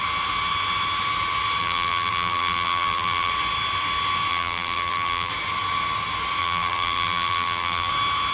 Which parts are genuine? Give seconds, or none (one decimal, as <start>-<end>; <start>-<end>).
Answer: 0.0-1.6; 3.3-4.3; 5.3-6.4; 7.9-8.3